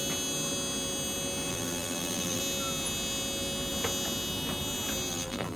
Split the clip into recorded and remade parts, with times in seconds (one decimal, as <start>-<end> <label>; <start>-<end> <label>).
0.0-1.5 recorded; 1.5-2.4 remade; 2.4-5.1 recorded; 5.1-5.6 remade